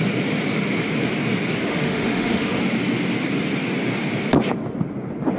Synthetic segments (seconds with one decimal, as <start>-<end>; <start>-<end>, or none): 1.7-2.6